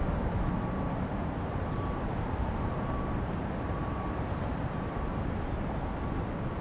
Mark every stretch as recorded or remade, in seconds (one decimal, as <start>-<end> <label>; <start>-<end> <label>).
0.0-1.1 recorded; 1.1-5.1 remade; 5.1-6.6 recorded